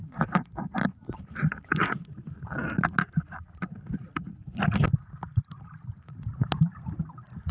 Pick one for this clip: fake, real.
real